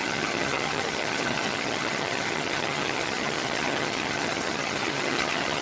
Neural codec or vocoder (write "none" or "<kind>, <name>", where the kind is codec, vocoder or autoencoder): vocoder, HiFi-GAN